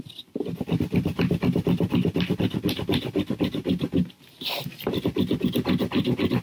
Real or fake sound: real